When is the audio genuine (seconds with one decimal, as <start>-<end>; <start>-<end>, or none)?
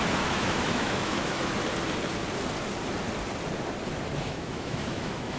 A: 1.5-4.2